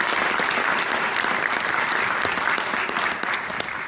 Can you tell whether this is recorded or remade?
recorded